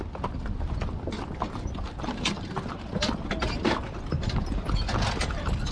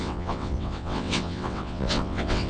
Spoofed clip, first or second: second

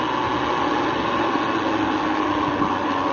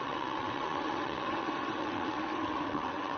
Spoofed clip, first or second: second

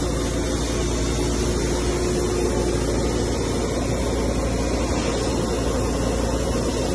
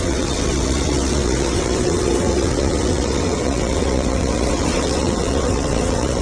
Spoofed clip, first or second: second